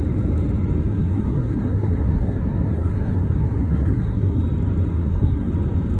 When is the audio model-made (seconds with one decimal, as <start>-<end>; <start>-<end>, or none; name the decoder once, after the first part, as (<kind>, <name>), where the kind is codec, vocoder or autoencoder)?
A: 0.8-4.4 (codec, SNAC); 4.9-5.5